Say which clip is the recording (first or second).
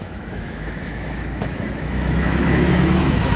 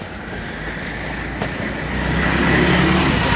second